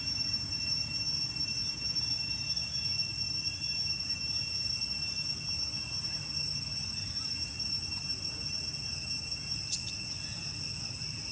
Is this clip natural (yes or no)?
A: yes